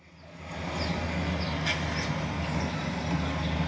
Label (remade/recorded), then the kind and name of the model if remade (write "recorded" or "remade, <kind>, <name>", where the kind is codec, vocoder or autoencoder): recorded